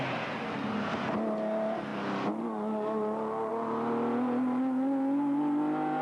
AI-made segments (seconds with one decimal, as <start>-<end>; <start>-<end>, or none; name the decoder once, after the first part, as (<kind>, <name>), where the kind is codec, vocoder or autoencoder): none